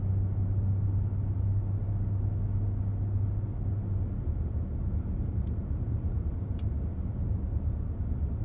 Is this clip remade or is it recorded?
recorded